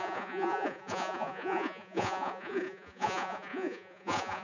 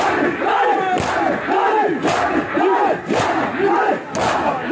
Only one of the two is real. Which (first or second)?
second